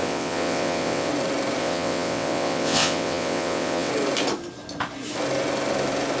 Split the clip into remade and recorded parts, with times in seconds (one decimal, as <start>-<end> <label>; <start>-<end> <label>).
0.0-1.1 remade; 1.1-1.6 recorded; 1.6-3.9 remade; 3.9-6.2 recorded

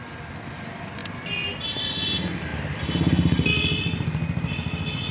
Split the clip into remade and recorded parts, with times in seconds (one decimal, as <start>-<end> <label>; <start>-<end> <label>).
0.0-5.1 recorded

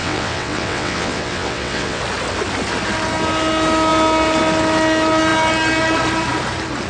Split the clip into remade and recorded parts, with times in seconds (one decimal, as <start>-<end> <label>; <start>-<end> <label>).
0.0-2.0 remade; 2.0-6.9 recorded

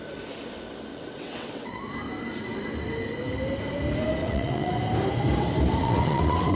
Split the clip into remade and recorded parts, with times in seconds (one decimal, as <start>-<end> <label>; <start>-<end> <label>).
0.0-0.9 recorded; 0.9-1.8 remade; 1.8-4.2 recorded; 4.2-4.7 remade; 4.7-5.8 recorded; 5.8-6.6 remade

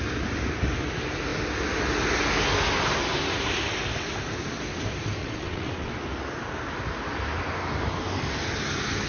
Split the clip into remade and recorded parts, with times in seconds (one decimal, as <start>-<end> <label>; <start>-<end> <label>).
0.0-5.2 recorded; 5.2-5.9 remade; 5.9-9.1 recorded

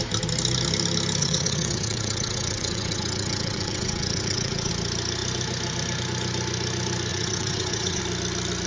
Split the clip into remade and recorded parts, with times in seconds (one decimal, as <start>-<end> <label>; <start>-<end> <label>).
0.0-1.2 recorded; 1.2-4.7 remade; 4.7-7.1 recorded; 7.1-8.0 remade; 8.0-8.7 recorded

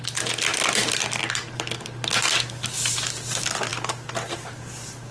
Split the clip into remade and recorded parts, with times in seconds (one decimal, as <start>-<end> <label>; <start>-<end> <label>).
0.0-5.1 recorded

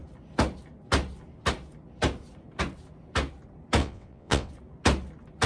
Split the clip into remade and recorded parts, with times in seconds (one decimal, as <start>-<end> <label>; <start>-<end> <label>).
0.0-3.8 recorded; 3.8-4.5 remade; 4.5-5.5 recorded